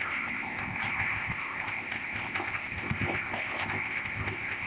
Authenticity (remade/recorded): remade